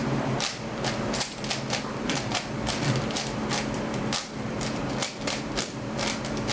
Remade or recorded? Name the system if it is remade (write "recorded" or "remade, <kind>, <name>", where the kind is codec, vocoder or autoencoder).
remade, vocoder, BigVGAN v2